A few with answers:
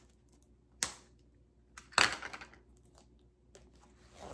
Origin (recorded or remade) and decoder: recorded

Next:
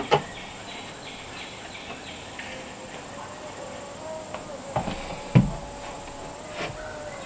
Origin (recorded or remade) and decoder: recorded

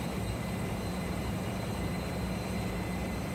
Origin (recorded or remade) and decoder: remade, vocoder, BigVGAN v2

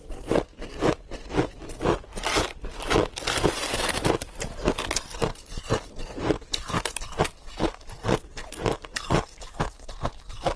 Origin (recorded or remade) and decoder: recorded